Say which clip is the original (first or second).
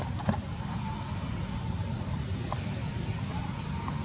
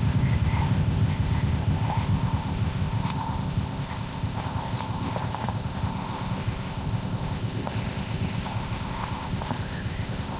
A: first